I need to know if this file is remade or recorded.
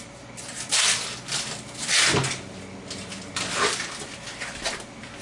recorded